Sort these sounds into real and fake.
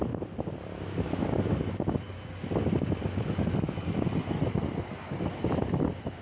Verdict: real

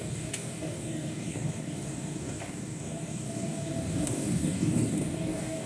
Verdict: fake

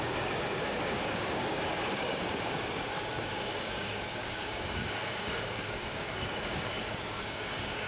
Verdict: fake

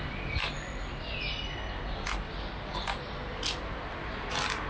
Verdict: real